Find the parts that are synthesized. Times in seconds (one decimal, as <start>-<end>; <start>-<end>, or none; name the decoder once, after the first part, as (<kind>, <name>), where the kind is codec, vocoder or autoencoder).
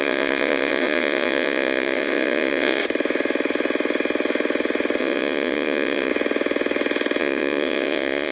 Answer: 0.0-2.8 (vocoder, WaveNeXt); 5.0-6.1; 7.2-8.3